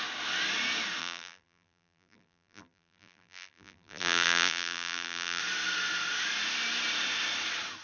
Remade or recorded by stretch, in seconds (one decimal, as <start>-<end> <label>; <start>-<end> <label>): 0.0-1.0 recorded; 1.0-5.4 remade; 5.4-7.8 recorded